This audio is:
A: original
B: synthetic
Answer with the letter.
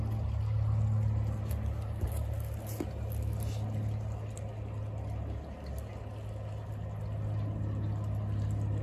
A